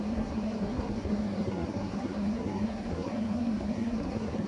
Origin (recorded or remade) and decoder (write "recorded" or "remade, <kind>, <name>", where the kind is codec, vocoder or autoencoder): remade, codec, SNAC